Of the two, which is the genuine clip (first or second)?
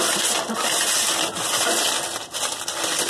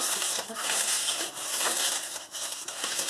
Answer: first